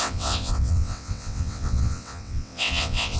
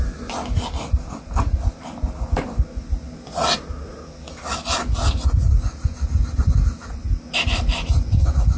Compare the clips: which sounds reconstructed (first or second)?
first